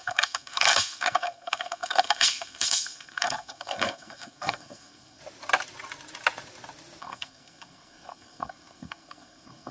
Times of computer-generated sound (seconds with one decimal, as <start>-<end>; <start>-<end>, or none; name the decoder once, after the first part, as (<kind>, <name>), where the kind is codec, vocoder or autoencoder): 0.0-5.2 (codec, SNAC); 7.0-9.7